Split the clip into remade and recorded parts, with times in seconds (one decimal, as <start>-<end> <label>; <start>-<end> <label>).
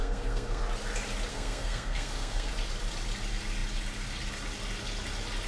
0.0-0.6 remade; 0.6-1.3 recorded; 1.3-2.5 remade; 2.5-5.5 recorded